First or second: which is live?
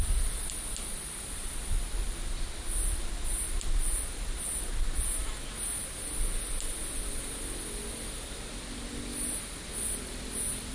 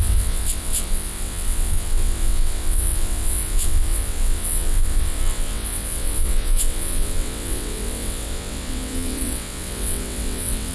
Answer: first